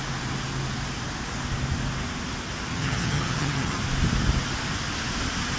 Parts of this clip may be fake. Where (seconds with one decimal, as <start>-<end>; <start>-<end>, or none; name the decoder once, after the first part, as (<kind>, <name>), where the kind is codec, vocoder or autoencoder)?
2.7-3.8 (vocoder, HiFi-GAN)